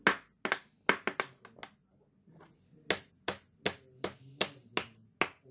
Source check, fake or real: real